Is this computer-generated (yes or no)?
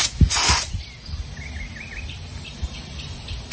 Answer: no